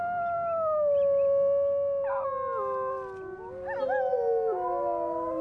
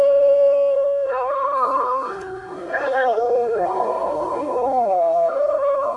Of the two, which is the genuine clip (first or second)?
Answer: first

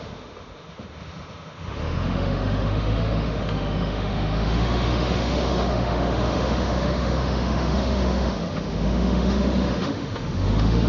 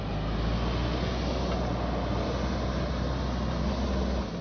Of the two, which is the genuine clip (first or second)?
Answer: second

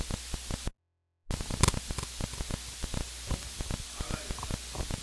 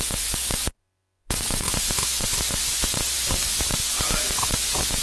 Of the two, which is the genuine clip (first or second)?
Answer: first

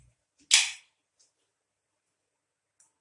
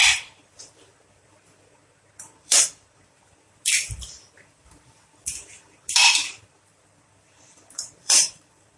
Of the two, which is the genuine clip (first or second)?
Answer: first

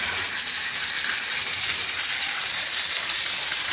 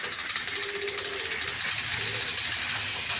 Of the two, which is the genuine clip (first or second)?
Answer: second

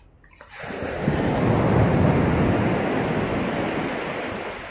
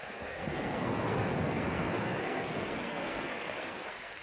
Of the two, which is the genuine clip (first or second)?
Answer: first